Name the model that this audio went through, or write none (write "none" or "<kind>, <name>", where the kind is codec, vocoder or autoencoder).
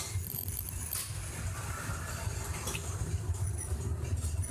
none